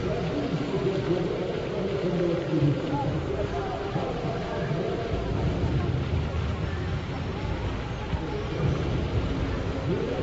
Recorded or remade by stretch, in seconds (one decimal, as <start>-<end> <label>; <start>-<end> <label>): 0.0-2.5 recorded; 2.5-4.4 remade; 4.4-10.2 recorded